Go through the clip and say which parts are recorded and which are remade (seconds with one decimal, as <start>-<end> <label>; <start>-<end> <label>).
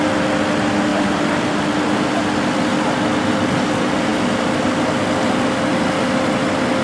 0.0-0.9 recorded; 0.9-1.6 remade; 1.6-6.8 recorded